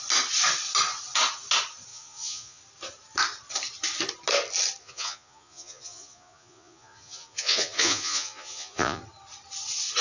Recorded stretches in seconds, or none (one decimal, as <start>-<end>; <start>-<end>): 0.0-1.9; 2.6-4.8; 9.0-10.0